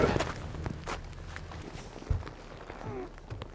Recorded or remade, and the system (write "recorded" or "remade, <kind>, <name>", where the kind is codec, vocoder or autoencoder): recorded